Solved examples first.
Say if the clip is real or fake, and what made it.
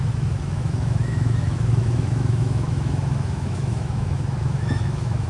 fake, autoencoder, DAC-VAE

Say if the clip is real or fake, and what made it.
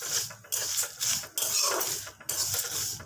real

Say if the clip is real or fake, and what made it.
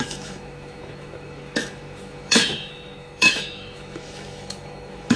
fake, autoencoder, DAC-VAE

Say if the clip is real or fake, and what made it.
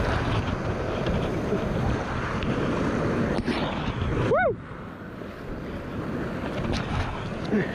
real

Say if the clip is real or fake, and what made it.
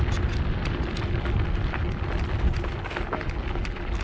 real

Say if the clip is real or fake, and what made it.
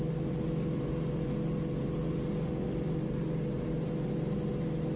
real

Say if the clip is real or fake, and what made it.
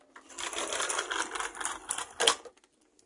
real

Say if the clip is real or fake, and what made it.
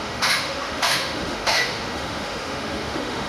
fake, autoencoder, DAC-VAE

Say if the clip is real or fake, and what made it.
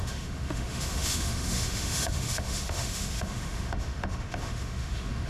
fake, autoencoder, DAC-VAE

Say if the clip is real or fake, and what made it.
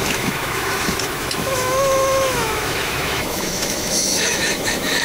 fake, autoencoder, DAC-VAE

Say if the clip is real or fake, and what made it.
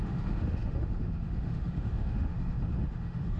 fake, autoencoder, DAC-VAE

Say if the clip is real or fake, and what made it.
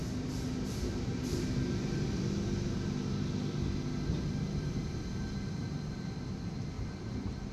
real